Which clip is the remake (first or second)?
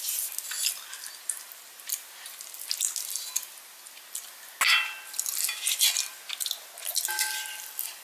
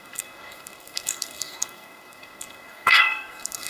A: second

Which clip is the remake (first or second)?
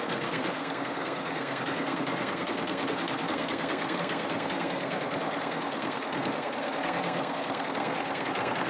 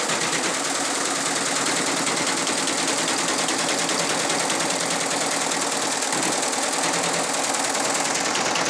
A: first